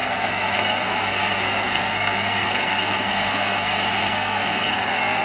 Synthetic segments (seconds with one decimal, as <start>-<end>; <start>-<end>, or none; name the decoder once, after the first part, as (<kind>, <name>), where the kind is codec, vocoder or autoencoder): 0.0-5.2 (codec, SNAC)